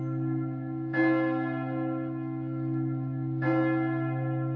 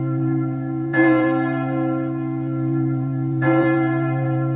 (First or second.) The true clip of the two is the first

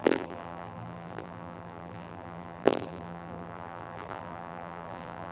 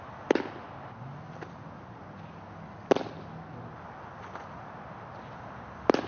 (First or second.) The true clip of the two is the second